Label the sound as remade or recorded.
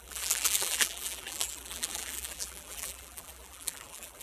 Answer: remade